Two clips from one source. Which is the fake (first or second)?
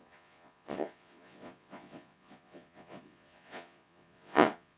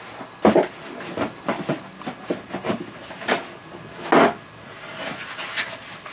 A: first